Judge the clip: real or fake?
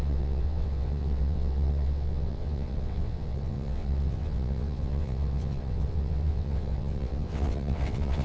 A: fake